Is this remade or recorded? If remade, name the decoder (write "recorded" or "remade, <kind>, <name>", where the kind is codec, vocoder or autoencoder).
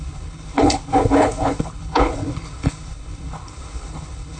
remade, codec, HILCodec